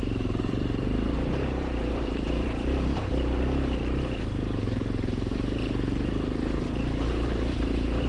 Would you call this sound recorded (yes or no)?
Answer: no